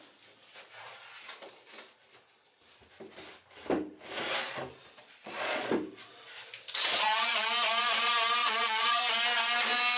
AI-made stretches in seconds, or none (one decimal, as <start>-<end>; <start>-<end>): 5.0-5.7; 6.8-7.5; 8.4-9.1